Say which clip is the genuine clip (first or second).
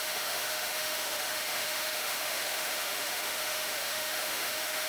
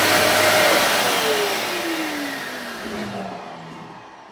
second